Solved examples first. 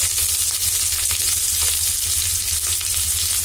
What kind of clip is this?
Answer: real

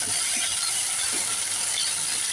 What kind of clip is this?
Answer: fake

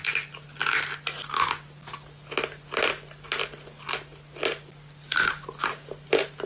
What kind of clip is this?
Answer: real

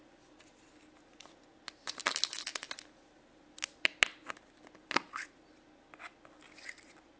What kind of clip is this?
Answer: real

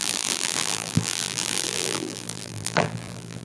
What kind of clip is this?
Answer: fake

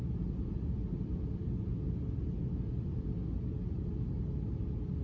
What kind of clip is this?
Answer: real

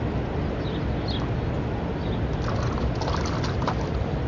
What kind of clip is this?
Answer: real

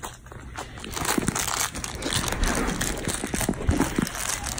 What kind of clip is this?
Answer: real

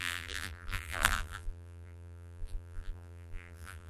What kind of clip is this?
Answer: fake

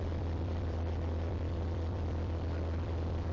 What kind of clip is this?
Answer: fake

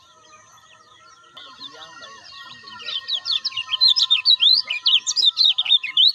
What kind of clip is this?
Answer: fake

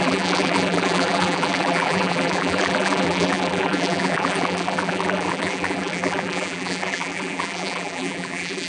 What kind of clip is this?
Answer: fake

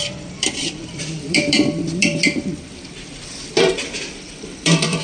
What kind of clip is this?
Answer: fake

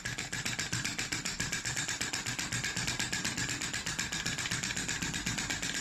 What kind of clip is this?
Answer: real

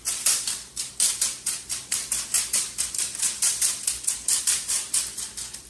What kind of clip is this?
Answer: fake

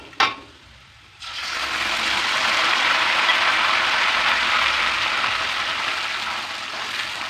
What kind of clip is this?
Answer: real